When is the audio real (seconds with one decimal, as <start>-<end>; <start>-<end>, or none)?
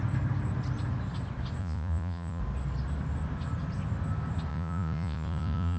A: 0.0-1.6; 2.4-4.5